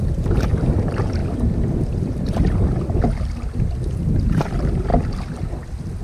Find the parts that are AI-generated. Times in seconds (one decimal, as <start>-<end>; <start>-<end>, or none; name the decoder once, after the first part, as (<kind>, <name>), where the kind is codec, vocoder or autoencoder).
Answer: 0.0-1.2 (vocoder, BigVGAN v2); 4.3-4.9